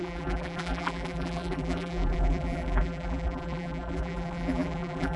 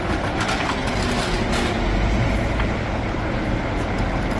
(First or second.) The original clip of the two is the second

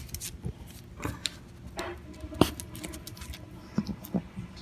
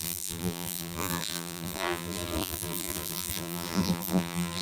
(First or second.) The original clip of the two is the first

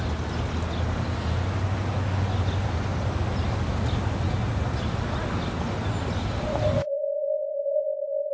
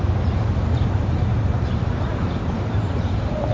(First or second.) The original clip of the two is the first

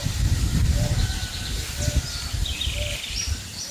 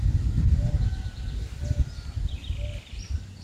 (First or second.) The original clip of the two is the second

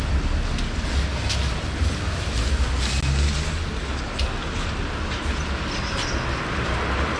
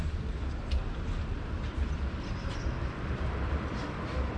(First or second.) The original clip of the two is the first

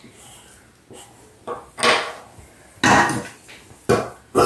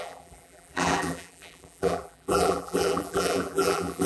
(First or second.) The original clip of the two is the first